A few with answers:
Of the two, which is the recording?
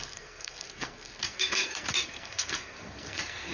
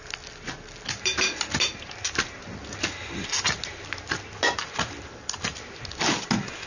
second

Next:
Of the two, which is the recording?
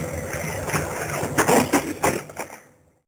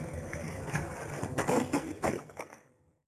first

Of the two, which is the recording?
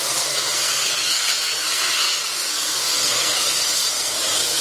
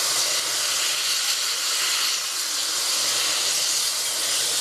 second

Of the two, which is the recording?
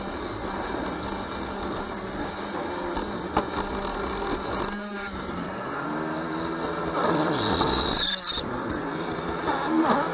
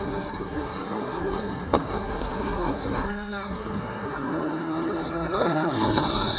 first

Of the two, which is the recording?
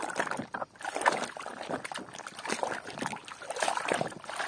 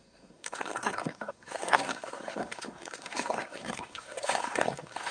first